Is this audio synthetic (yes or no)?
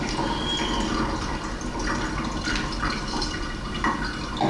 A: no